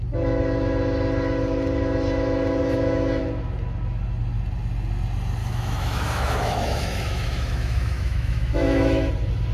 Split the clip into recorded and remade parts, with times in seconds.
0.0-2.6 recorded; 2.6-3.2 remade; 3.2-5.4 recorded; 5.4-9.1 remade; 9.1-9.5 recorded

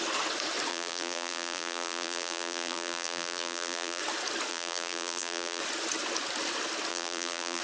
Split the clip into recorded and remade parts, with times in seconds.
0.0-0.7 recorded; 0.7-4.0 remade; 4.0-4.5 recorded; 4.5-5.6 remade; 5.6-6.9 recorded; 6.9-7.6 remade

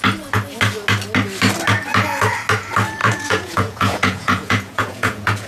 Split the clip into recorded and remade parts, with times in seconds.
0.0-3.0 recorded; 3.0-5.5 remade

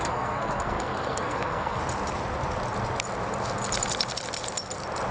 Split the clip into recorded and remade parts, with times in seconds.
0.0-1.8 remade; 1.8-5.1 recorded

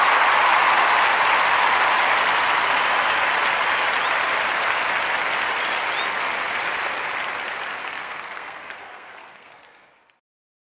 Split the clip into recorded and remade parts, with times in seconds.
0.0-7.8 recorded; 7.8-9.9 remade; 9.9-10.7 recorded